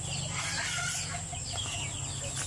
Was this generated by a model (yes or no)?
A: no